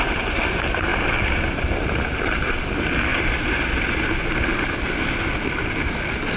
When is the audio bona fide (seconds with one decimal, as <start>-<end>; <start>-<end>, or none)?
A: 0.0-6.4